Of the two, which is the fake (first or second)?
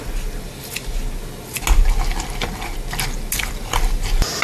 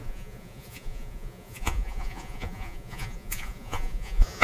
second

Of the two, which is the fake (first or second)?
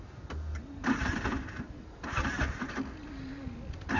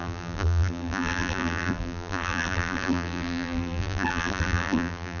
second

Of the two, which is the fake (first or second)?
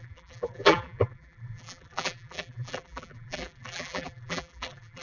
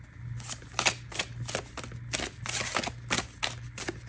first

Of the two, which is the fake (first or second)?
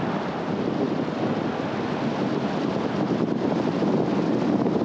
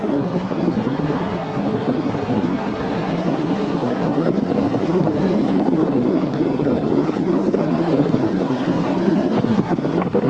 second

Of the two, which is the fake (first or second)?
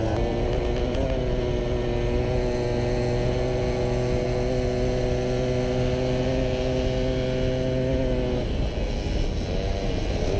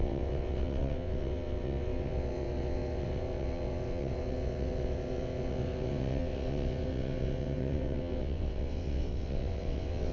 second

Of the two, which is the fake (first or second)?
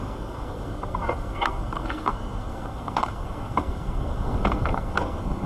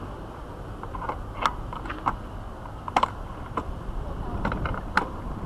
first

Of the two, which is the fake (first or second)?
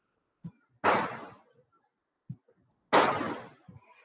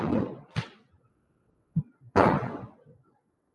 second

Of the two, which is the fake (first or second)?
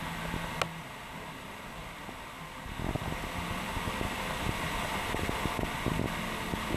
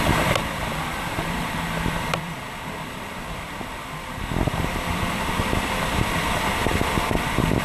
second